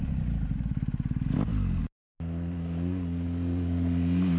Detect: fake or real real